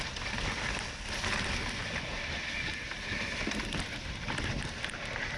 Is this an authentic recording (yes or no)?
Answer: yes